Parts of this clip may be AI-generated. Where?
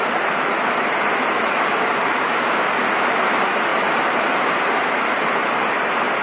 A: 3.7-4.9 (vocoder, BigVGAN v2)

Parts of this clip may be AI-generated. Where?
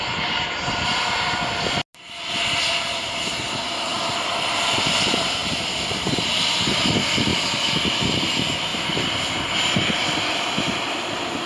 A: 5.4-6.4 (vocoder, BigVGAN v2)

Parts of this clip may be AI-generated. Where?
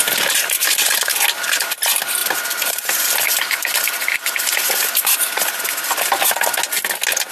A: 0.0-0.9 (vocoder, BigVGAN v2); 2.2-5.6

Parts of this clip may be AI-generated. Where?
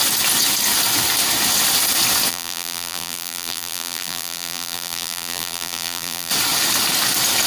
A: 2.3-6.3 (vocoder, BigVGAN v2)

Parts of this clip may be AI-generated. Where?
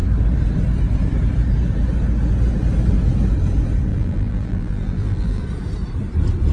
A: 3.9-5.4 (vocoder, BigVGAN v2)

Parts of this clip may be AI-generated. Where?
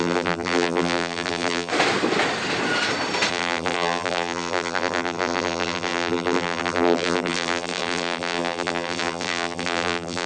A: 0.0-1.7 (vocoder, BigVGAN v2); 3.3-10.3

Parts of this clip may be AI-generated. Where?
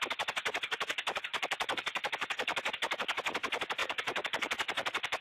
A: 1.3-2.7 (vocoder, BigVGAN v2); 3.8-5.2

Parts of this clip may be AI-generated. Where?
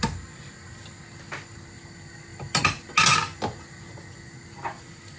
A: none